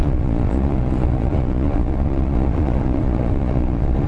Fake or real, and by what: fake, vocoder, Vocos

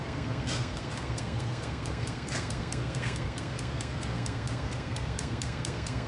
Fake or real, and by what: fake, codec, SNAC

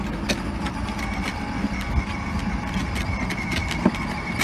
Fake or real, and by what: real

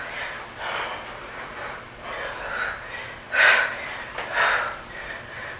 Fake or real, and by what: real